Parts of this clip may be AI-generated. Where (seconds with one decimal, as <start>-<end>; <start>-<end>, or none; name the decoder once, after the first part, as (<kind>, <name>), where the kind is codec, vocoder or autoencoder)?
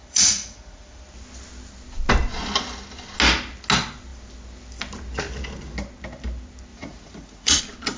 0.0-1.0 (vocoder, Vocos); 6.7-7.6